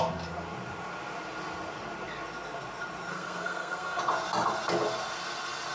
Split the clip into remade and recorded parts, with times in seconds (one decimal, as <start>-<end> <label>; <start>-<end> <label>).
0.0-3.1 recorded; 3.1-4.0 remade; 4.0-5.7 recorded